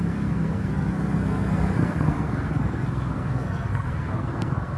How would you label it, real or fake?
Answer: fake